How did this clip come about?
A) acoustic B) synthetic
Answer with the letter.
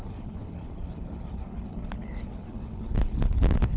B